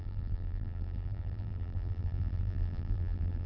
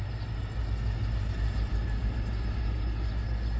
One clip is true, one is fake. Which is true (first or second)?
second